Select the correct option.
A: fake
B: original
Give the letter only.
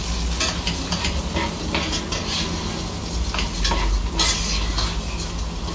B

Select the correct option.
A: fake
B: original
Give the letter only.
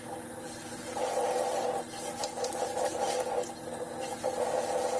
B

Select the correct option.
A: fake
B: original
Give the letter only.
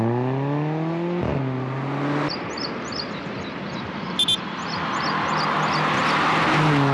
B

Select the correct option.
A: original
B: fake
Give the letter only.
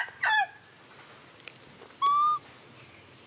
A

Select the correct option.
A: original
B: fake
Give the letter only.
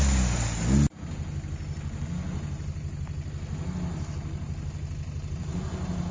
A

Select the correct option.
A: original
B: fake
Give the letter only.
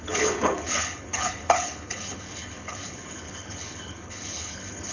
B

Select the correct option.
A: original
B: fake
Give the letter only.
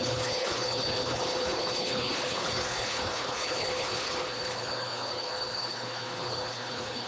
B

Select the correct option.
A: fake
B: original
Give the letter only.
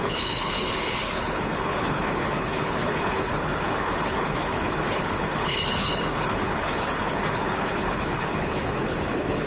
A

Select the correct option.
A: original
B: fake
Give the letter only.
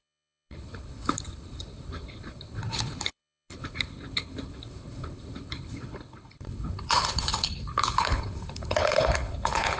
B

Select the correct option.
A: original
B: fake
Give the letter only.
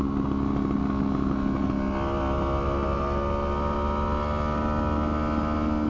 A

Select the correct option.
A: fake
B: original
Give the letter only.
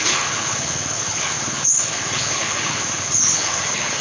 A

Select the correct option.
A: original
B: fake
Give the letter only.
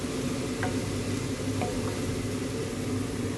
A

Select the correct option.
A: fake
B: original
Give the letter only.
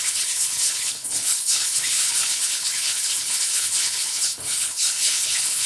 A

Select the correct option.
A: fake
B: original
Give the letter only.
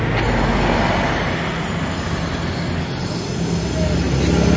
B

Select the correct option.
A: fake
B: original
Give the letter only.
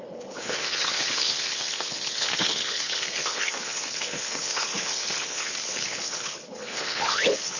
A